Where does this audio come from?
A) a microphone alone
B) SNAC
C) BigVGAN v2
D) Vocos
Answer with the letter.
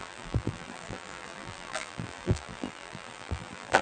C